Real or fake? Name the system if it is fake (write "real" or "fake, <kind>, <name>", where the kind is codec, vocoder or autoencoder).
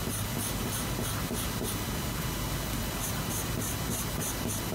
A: real